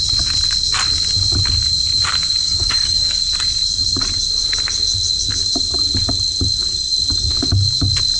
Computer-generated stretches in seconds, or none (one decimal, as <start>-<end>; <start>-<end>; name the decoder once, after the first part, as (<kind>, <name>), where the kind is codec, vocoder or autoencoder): 2.4-3.2 (codec, DAC)